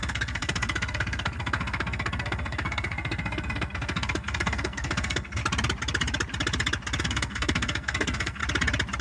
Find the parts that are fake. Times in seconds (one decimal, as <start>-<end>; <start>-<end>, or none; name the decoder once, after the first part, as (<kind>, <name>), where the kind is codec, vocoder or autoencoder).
0.0-5.4 (codec, SNAC); 7.0-8.4